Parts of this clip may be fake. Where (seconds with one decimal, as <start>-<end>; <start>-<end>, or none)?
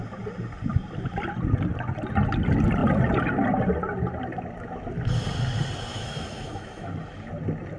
5.9-6.9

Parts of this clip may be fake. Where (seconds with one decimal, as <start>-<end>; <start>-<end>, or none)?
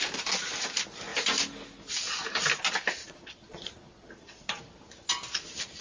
3.0-4.6